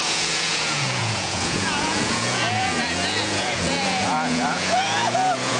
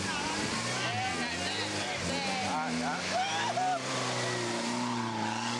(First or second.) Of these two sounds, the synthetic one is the first